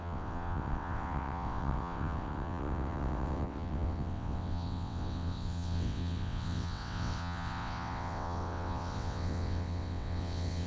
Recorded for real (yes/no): no